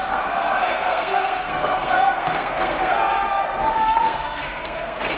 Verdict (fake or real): fake